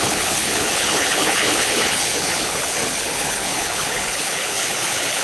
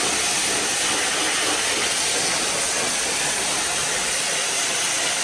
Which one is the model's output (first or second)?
first